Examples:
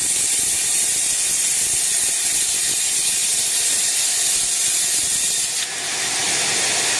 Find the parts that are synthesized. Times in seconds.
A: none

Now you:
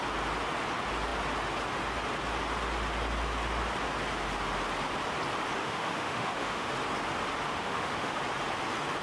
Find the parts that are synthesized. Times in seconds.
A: 5.6-6.7; 7.5-8.2

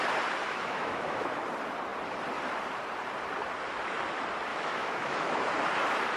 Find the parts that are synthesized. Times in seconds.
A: 0.4-1.4; 4.5-5.4

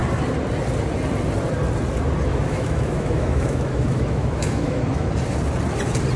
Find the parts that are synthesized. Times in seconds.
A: 2.3-5.1

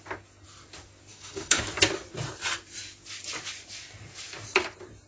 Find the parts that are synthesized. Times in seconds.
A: 1.1-1.6

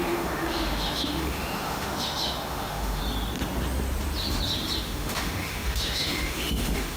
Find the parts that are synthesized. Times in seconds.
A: 0.0-3.0; 4.8-7.0